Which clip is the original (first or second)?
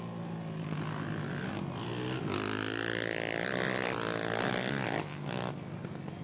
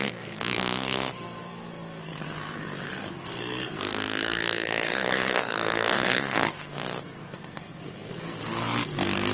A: first